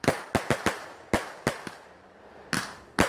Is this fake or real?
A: real